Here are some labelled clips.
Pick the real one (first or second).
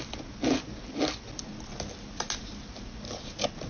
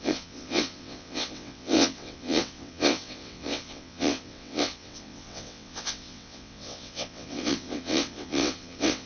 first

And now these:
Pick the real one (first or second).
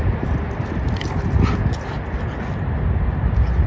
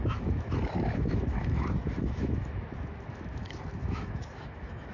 first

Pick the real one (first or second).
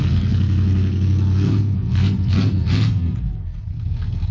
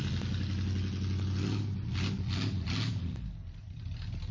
second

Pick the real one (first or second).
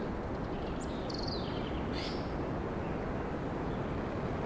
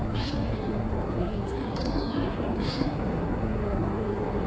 first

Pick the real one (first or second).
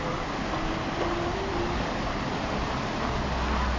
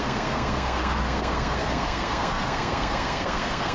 first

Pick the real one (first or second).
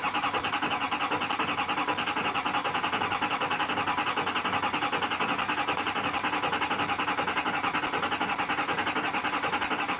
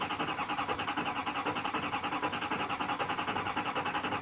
first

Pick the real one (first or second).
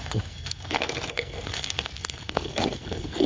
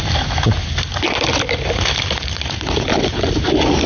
second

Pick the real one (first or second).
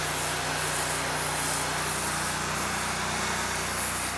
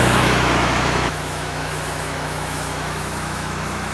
first